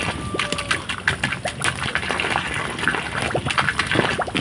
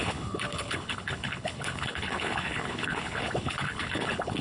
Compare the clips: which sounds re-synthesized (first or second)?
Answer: second